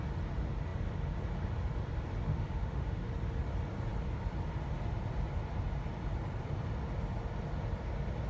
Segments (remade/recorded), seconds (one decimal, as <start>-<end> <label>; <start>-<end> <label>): 0.0-2.3 recorded; 2.3-3.1 remade; 3.1-8.3 recorded